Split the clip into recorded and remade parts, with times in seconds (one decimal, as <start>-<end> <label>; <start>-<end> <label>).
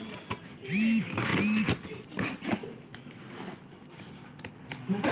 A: 0.0-2.9 recorded; 2.9-3.7 remade; 3.7-5.1 recorded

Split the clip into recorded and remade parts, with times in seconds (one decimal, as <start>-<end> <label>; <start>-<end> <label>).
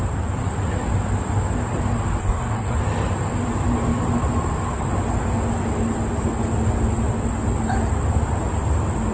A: 0.0-2.2 recorded; 2.2-2.8 remade; 2.8-9.1 recorded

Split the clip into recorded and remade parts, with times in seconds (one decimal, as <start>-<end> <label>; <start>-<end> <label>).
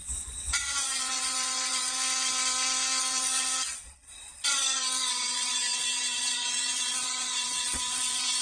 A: 0.0-2.0 remade; 2.0-3.0 recorded; 3.0-8.4 remade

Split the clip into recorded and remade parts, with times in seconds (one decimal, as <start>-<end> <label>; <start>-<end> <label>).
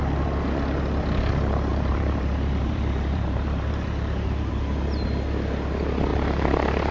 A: 0.0-1.7 recorded; 1.7-4.5 remade; 4.5-6.1 recorded; 6.1-6.9 remade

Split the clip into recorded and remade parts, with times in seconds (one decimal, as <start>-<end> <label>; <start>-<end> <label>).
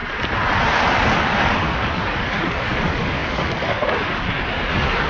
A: 0.0-0.9 recorded; 0.9-5.1 remade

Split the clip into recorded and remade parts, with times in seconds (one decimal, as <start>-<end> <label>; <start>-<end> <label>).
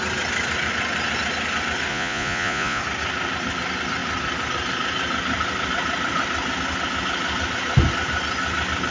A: 0.0-1.9 recorded; 1.9-2.8 remade; 2.8-8.9 recorded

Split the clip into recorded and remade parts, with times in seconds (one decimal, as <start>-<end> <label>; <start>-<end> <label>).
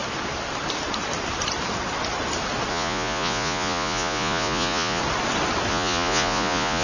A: 0.0-2.7 recorded; 2.7-5.0 remade; 5.0-5.7 recorded; 5.7-6.8 remade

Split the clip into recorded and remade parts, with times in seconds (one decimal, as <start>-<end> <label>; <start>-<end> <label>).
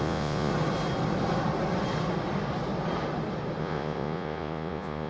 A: 0.0-0.5 remade; 0.5-3.6 recorded; 3.6-5.1 remade